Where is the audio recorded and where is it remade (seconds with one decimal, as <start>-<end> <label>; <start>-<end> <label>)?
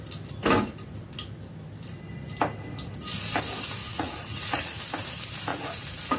0.0-3.8 recorded; 3.8-4.8 remade; 4.8-5.5 recorded; 5.5-6.2 remade